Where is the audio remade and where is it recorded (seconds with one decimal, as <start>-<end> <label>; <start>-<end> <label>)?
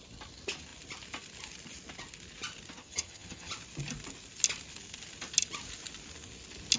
0.0-2.8 recorded; 2.8-3.5 remade; 3.5-6.8 recorded